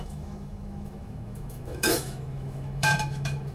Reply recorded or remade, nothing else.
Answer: remade